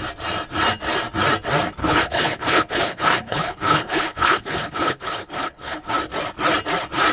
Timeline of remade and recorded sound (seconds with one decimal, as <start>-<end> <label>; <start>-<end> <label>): 0.0-1.8 recorded; 1.8-5.9 remade; 5.9-7.1 recorded